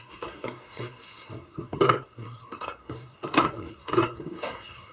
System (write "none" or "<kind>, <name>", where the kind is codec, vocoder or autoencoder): codec, SNAC